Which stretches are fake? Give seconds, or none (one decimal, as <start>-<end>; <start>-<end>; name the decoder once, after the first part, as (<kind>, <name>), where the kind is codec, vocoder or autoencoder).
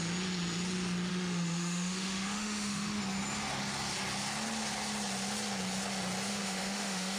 1.1-3.0 (autoencoder, DAC-VAE); 6.3-7.2